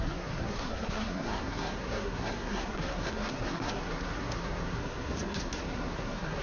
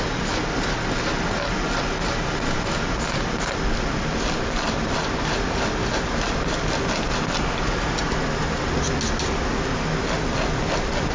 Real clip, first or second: second